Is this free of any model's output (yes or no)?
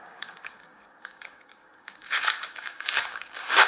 no